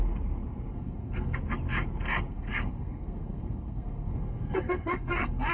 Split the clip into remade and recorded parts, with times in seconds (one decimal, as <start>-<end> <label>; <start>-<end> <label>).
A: 0.0-0.7 recorded; 0.7-1.4 remade; 1.4-2.3 recorded; 2.3-5.5 remade